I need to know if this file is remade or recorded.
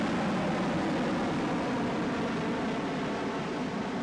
recorded